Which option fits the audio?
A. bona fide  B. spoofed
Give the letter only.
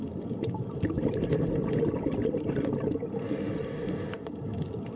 A